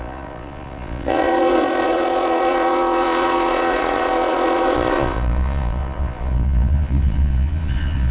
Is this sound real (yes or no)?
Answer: no